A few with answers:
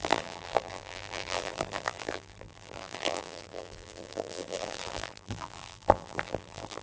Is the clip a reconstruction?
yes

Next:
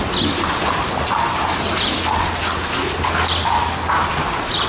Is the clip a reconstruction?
no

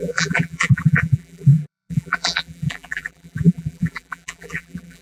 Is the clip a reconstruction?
yes